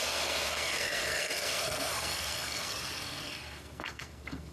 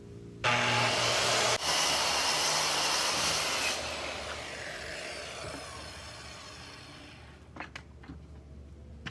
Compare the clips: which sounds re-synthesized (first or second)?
first